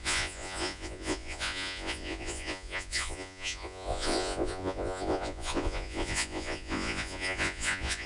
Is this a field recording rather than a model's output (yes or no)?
no